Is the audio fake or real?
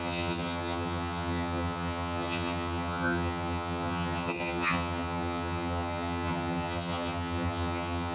fake